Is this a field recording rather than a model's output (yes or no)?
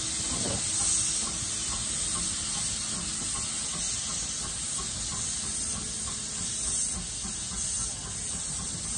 yes